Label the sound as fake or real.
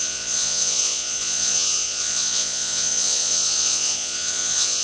fake